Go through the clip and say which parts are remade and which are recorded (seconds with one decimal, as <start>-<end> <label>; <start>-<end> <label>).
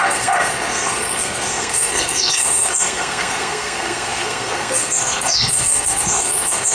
0.0-6.7 remade